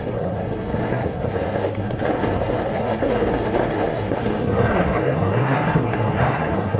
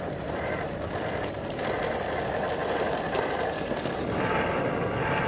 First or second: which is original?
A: second